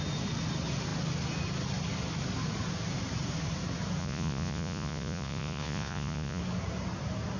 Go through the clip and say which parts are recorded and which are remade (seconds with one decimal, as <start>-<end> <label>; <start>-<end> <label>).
0.0-4.0 recorded; 4.0-6.4 remade; 6.4-7.4 recorded